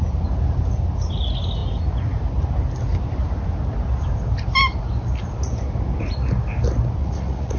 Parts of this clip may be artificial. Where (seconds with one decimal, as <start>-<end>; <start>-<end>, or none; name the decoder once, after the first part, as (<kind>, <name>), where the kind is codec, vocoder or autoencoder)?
7.0-7.6 (vocoder, Vocos)